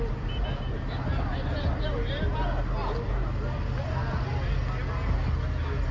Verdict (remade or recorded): recorded